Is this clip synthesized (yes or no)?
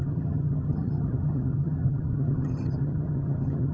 yes